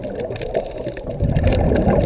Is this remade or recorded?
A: recorded